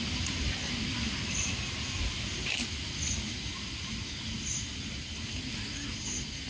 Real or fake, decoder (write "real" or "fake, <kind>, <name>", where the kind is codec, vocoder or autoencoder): real